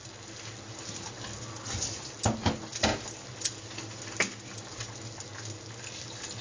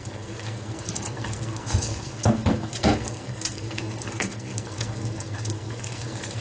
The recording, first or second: first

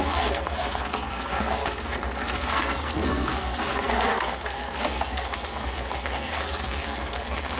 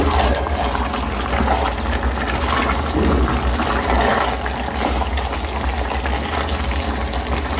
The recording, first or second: second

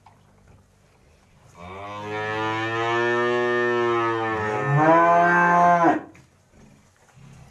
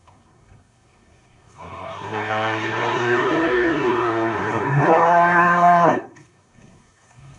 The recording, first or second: first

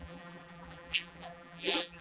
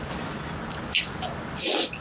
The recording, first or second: second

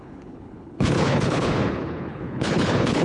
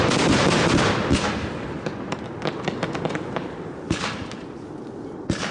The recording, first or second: second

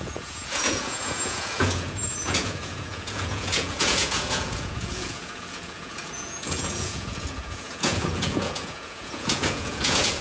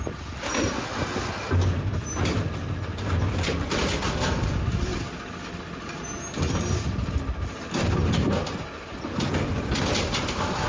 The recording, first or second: second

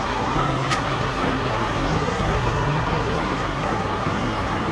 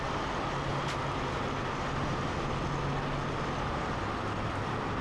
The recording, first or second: second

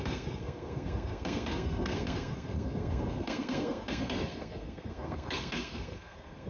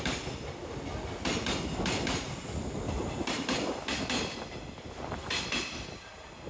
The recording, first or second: second